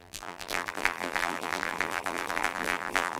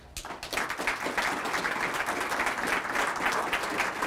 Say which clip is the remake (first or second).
first